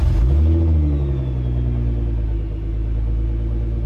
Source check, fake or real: real